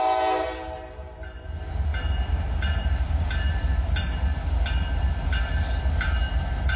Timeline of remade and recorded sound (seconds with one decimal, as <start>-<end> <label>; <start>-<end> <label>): 0.0-6.8 recorded